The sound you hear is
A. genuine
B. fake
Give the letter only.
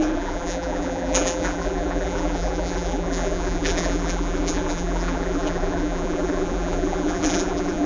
B